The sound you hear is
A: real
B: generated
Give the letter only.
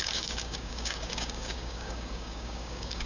B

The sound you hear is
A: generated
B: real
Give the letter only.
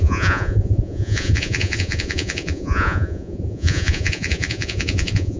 A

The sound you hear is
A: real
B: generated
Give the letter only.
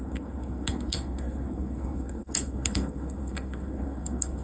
B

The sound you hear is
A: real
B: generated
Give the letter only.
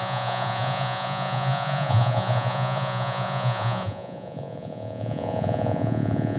B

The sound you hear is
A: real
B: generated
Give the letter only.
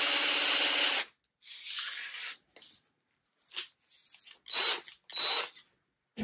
A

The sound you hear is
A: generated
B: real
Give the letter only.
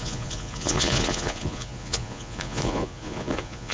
A